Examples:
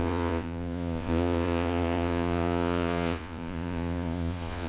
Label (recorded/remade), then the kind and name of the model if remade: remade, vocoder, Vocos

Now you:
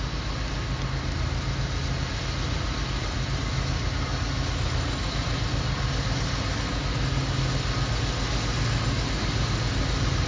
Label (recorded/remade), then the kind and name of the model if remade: recorded